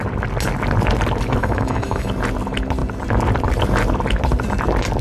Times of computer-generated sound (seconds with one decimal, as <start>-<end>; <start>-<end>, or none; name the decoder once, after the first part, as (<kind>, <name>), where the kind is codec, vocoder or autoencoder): 1.4-2.1 (autoencoder, DAC-VAE)